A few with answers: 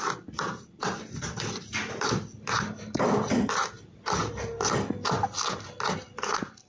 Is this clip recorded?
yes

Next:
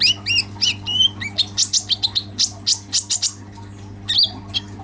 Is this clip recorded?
yes